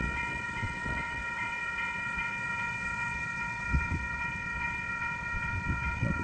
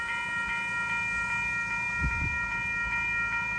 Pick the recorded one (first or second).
second